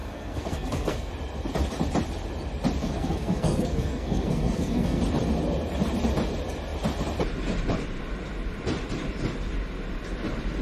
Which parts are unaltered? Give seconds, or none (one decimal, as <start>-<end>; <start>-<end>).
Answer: 1.1-2.8; 5.0-10.6